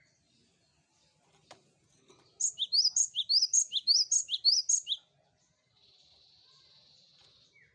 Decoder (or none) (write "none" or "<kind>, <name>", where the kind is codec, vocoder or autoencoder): none